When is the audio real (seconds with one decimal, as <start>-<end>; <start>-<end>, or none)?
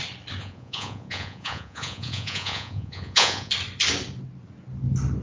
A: 0.0-0.4; 3.5-5.2